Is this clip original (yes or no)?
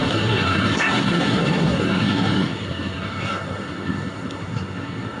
no